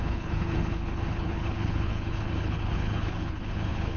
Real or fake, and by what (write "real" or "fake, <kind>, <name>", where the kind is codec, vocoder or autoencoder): fake, codec, HILCodec